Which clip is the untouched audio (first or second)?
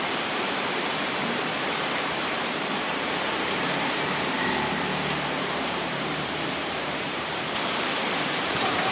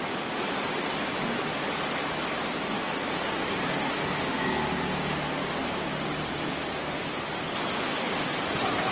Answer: second